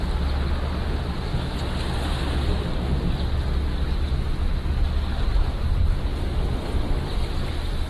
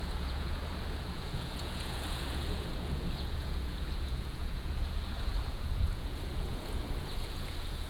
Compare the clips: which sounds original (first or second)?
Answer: first